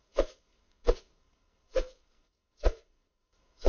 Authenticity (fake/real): fake